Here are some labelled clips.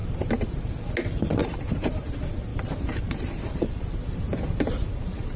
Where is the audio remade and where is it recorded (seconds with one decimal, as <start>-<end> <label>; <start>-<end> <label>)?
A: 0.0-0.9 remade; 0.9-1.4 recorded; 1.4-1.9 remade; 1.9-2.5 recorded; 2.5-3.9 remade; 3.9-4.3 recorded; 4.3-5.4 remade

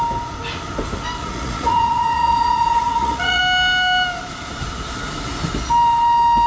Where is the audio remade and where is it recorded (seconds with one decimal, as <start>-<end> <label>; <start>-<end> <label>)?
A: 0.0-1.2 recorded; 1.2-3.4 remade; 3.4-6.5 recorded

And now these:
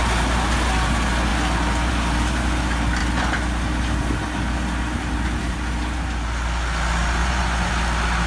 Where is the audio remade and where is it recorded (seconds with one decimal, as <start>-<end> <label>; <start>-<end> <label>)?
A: 0.0-7.2 recorded; 7.2-7.7 remade; 7.7-8.3 recorded